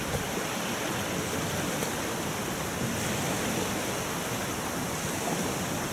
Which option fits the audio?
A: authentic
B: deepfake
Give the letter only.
A